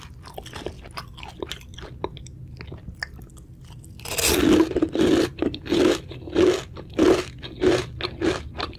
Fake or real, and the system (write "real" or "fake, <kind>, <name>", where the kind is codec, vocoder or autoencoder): real